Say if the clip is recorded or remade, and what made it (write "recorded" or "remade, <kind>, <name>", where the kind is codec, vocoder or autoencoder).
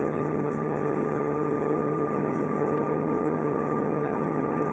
remade, vocoder, HiFi-GAN